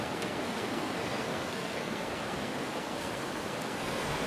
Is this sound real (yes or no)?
no